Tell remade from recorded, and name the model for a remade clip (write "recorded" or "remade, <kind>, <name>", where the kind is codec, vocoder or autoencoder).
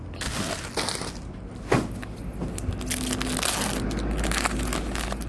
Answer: recorded